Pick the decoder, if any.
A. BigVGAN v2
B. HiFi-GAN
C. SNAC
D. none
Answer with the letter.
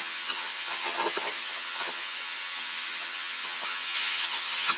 B